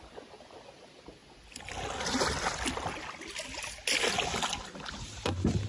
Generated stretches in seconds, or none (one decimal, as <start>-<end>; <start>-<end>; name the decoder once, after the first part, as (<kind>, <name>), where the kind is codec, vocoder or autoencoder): none